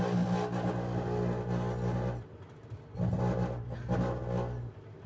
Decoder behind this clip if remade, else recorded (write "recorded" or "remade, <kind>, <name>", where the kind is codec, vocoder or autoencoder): recorded